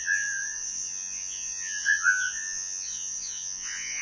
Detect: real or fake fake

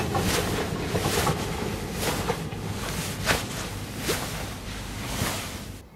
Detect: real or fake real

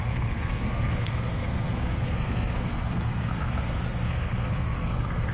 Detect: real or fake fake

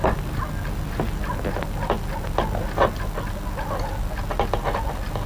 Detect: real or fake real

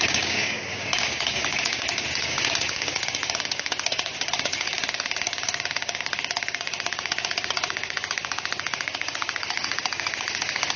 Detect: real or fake fake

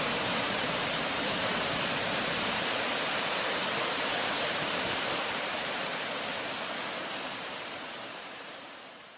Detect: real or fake fake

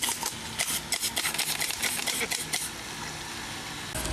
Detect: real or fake real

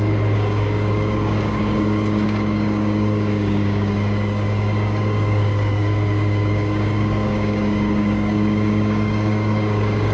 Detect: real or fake fake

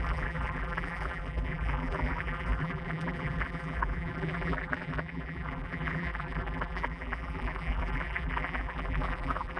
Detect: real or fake fake